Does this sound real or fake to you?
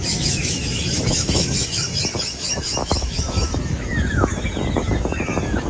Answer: fake